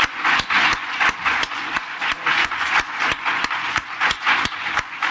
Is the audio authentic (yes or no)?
no